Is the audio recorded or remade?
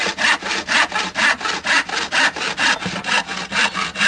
recorded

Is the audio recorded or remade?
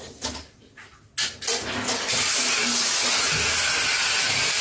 recorded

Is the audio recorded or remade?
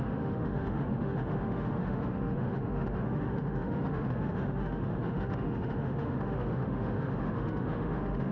remade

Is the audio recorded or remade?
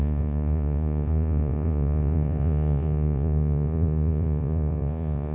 remade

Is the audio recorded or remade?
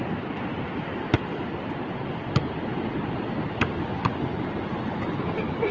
recorded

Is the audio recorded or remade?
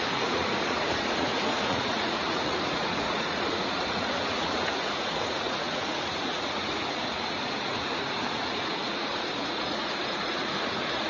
remade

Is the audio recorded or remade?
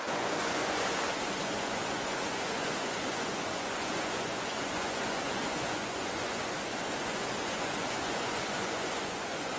remade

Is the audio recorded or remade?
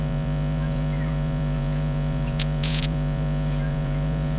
remade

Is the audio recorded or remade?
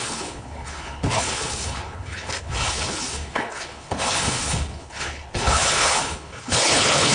remade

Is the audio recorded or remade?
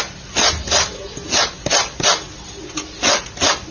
recorded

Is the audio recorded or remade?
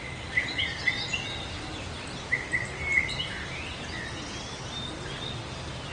recorded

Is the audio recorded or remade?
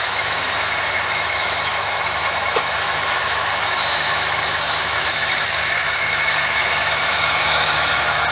remade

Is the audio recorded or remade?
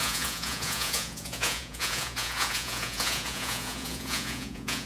remade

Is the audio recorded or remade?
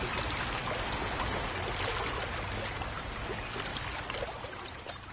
recorded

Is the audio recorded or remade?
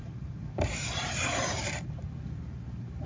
remade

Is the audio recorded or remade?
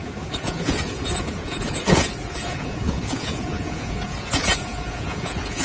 remade